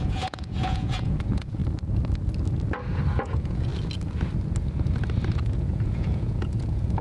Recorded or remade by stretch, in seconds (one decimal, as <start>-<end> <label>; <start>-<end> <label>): 0.0-1.6 remade; 1.6-3.1 recorded; 3.1-3.7 remade; 3.7-5.4 recorded; 5.4-7.0 remade